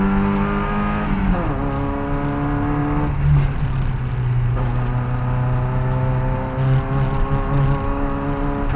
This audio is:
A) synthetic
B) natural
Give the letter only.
B